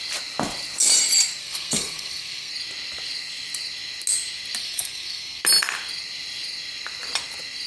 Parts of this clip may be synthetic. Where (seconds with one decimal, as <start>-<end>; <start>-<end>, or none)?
1.4-2.5; 4.6-5.4